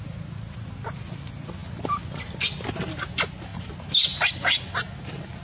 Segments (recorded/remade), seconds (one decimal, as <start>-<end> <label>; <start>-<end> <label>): 0.0-5.4 recorded